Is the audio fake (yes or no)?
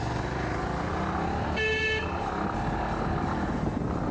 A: no